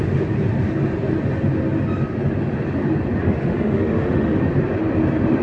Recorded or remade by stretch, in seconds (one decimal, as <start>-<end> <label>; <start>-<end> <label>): 0.0-3.2 recorded; 3.2-4.4 remade; 4.4-5.4 recorded